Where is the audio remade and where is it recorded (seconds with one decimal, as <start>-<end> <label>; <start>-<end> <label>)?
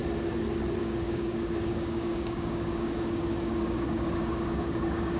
0.0-0.8 recorded; 0.8-5.2 remade